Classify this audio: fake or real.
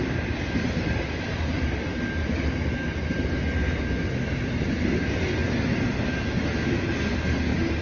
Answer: real